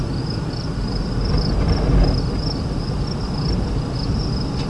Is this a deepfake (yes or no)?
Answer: no